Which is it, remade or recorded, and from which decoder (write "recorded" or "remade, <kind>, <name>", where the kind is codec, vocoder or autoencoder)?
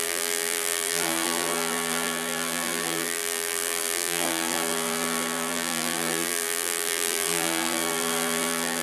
remade, vocoder, BigVGAN v2